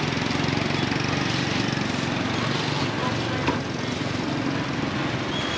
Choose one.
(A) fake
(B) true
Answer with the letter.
B